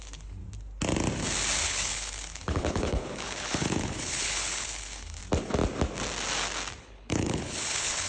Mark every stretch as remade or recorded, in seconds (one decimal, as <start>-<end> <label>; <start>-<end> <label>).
0.0-0.4 remade; 0.4-1.6 recorded; 1.6-5.2 remade; 5.2-6.8 recorded; 6.8-8.1 remade